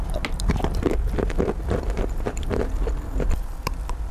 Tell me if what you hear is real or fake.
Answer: real